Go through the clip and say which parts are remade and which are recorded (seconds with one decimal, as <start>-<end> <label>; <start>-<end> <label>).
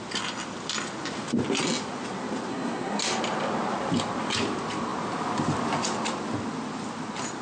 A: 0.0-2.5 recorded; 2.5-3.0 remade; 3.0-7.4 recorded